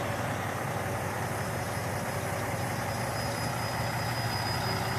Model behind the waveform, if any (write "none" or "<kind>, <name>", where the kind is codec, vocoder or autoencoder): none